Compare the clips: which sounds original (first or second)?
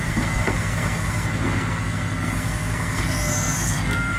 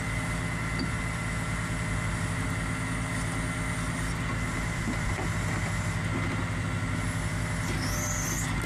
second